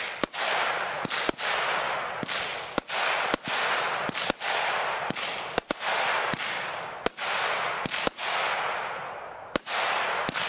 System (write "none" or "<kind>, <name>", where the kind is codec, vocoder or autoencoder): none